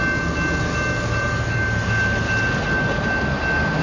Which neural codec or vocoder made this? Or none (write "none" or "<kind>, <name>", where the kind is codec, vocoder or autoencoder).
none